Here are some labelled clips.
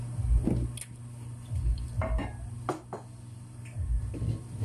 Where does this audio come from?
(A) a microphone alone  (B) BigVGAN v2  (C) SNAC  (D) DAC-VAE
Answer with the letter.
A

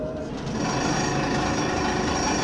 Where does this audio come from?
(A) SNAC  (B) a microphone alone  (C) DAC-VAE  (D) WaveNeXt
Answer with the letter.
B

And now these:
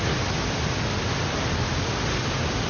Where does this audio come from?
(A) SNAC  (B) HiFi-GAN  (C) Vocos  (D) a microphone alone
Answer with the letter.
D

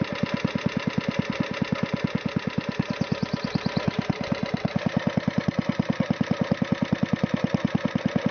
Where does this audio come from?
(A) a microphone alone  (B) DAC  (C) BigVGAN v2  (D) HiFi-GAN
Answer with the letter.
A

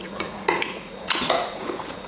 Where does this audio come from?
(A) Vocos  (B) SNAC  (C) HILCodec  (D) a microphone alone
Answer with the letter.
A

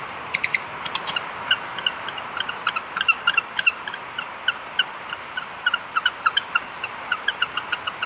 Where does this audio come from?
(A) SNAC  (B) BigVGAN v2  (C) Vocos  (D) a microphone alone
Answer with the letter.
D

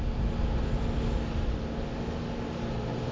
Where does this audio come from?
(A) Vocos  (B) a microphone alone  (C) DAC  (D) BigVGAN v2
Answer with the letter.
B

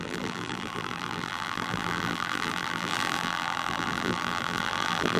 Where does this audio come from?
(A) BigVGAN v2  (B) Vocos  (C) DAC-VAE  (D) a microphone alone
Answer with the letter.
A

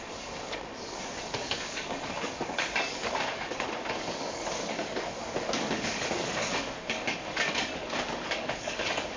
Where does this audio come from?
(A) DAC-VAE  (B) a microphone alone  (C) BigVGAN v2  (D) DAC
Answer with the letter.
D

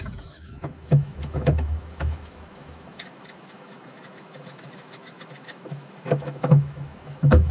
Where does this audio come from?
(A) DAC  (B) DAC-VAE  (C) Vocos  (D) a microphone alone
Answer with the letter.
B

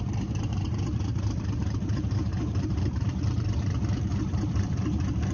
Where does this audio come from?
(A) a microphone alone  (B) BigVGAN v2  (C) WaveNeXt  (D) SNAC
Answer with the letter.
B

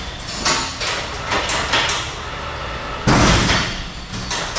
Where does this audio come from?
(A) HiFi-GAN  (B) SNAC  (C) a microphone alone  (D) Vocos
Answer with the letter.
C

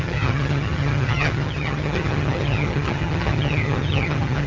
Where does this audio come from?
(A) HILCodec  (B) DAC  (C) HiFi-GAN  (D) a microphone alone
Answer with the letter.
C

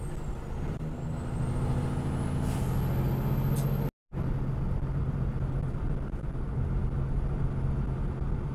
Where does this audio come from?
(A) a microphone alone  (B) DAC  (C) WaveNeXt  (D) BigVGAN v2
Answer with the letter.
A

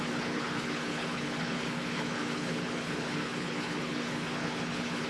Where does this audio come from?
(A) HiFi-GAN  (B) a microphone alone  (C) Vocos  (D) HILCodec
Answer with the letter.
D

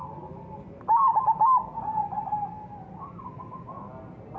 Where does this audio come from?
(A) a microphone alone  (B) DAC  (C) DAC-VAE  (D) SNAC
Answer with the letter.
A